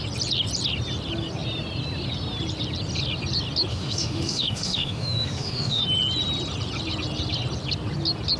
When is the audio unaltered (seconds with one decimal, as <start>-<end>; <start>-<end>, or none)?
0.0-3.7; 5.8-8.4